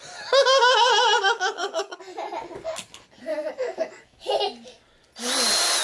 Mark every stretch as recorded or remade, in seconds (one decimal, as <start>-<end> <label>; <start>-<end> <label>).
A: 0.0-0.9 recorded; 0.9-2.0 remade; 2.0-3.3 recorded; 3.3-4.4 remade; 4.4-5.8 recorded